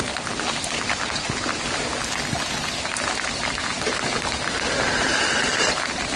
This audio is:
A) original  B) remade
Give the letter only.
A